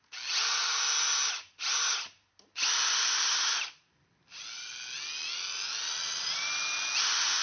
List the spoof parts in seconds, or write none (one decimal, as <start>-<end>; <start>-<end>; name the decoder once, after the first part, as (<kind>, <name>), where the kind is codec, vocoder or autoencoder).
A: none